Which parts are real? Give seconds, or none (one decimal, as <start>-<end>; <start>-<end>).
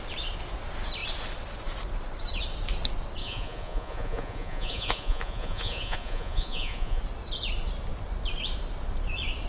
0.0-3.2; 7.0-9.5